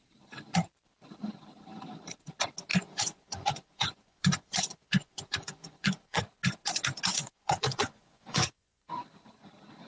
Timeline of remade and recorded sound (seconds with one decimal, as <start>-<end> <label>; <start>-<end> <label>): 0.0-2.7 recorded; 2.7-6.2 remade; 6.2-7.1 recorded; 7.1-8.9 remade; 8.9-9.9 recorded